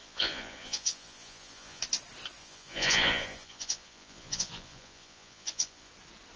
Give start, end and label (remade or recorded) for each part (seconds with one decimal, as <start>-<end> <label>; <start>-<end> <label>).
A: 0.0-1.8 remade; 1.8-2.4 recorded; 2.4-5.9 remade; 5.9-6.4 recorded